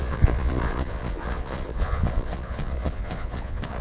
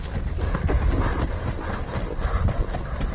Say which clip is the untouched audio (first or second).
second